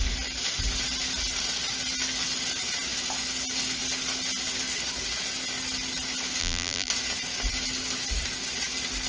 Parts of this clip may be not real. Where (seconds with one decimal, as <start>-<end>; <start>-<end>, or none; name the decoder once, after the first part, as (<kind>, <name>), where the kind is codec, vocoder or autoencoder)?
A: 6.4-6.9 (vocoder, BigVGAN v2)